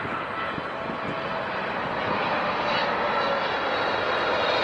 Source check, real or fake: real